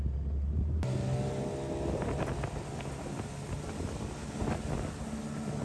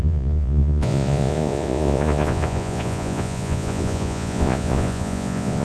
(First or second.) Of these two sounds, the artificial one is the second